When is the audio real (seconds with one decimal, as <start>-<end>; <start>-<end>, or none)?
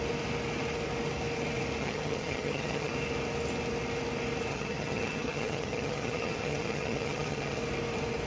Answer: 0.0-1.8; 2.9-4.5; 7.6-8.3